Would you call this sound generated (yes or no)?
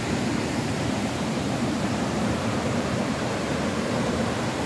yes